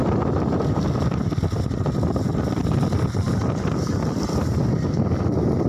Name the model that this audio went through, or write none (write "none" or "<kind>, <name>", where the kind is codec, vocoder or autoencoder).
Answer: none